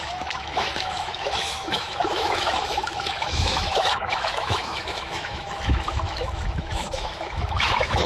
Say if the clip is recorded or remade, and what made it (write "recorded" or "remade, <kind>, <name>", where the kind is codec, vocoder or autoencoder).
remade, autoencoder, DAC-VAE